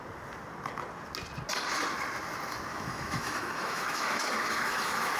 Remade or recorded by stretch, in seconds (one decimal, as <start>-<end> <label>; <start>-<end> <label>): 0.0-2.7 recorded; 2.7-5.2 remade